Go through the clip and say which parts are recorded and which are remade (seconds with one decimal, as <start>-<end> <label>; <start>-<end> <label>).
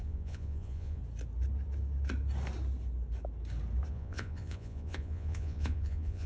0.0-1.0 remade; 1.0-3.9 recorded; 3.9-6.3 remade